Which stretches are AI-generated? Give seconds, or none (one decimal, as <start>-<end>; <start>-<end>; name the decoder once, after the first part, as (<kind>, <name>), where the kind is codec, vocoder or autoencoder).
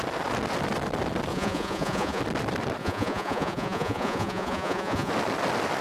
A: 1.3-2.2 (vocoder, Vocos); 2.8-5.1